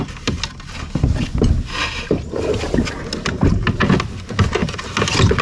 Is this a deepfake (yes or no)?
no